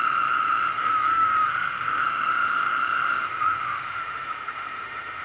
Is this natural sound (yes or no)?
no